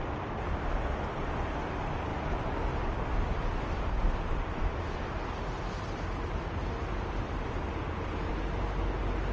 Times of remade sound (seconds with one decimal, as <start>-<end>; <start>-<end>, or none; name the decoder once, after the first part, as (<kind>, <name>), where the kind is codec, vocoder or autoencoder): none